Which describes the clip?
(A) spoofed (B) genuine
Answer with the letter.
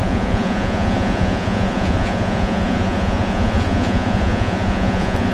A